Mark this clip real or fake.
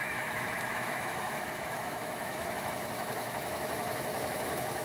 fake